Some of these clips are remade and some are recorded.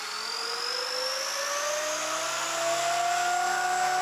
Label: recorded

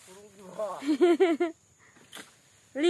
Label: recorded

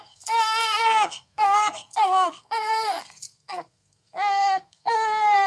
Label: remade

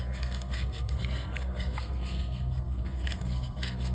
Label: remade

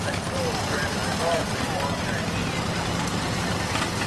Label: recorded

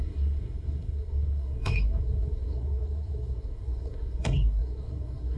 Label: remade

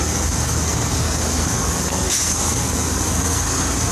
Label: remade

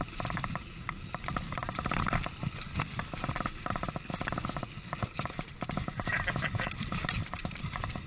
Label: recorded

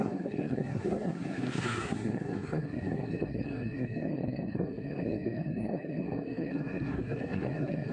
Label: remade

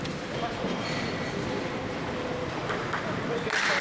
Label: recorded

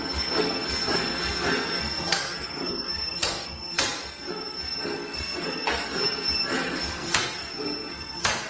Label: remade